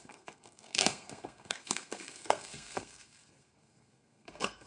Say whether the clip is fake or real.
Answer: fake